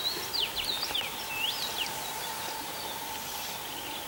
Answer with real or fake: real